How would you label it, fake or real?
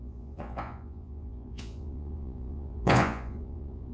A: fake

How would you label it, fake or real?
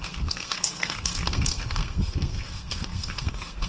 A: fake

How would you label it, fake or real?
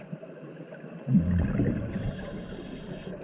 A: real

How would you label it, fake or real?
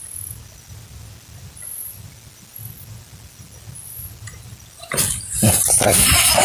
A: real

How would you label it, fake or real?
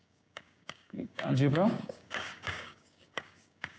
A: fake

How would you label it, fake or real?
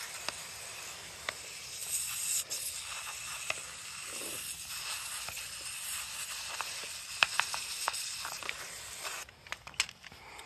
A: real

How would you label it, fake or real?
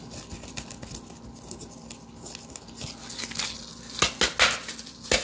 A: real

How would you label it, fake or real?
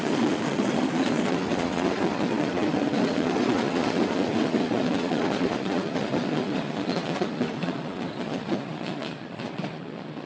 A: fake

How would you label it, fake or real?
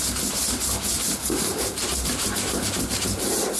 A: real